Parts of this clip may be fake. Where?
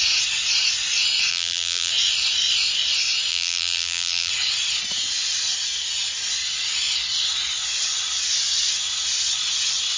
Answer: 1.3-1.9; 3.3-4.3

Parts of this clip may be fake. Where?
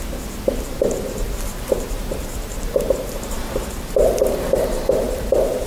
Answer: 0.0-5.7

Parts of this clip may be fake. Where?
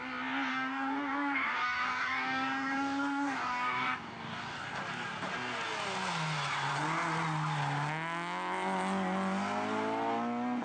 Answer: 0.5-4.8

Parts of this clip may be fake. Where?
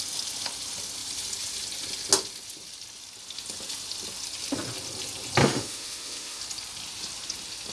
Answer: 5.4-6.4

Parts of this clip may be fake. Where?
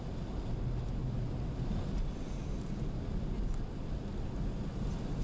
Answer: none